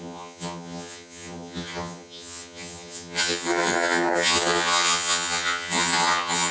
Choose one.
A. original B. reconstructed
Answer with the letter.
B